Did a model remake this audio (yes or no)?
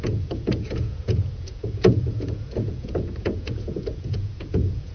yes